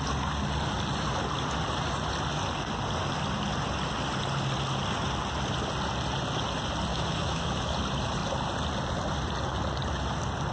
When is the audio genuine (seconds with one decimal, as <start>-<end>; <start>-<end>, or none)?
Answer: 0.0-6.9; 7.6-10.5